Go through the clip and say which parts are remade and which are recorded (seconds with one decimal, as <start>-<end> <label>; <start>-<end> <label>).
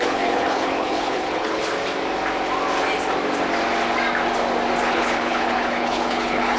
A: 0.0-1.6 remade; 1.6-4.8 recorded; 4.8-6.6 remade